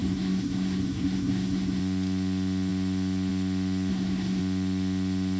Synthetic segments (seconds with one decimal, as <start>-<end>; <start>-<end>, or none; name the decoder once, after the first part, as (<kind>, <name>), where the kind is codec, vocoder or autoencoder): 0.0-1.8 (codec, SNAC); 3.9-4.4